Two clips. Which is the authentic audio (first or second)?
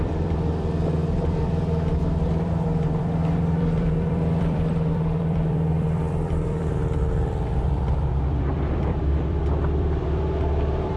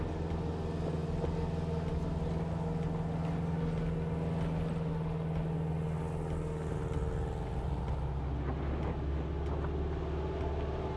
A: second